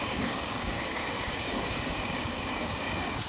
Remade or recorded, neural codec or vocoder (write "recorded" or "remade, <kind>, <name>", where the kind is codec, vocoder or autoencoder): remade, codec, DAC